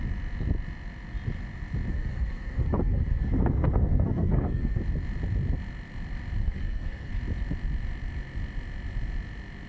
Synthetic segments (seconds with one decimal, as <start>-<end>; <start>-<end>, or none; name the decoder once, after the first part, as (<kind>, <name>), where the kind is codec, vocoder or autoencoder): 1.9-4.8 (codec, SNAC); 6.4-7.1